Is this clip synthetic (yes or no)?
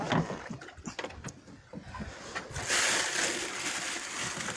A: no